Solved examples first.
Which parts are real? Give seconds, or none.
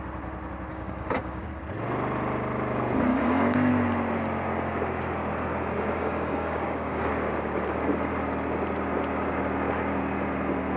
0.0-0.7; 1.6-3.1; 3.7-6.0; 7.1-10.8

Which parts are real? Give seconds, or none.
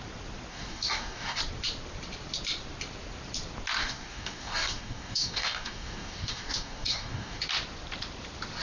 0.0-0.5; 1.4-3.8; 7.4-8.6